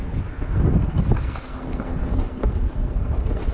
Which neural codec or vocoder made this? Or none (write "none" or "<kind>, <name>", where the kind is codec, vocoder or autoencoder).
codec, SNAC